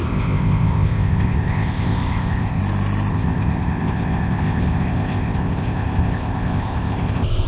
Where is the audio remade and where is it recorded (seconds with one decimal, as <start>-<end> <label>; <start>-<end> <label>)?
0.0-2.6 remade; 2.6-3.1 recorded; 3.1-7.5 remade